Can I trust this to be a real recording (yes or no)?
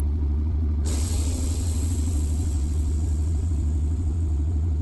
no